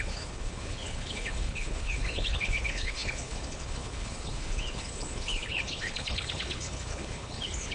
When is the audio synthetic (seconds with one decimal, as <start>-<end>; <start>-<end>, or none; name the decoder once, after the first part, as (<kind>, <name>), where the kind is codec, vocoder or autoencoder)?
0.0-7.7 (codec, HILCodec)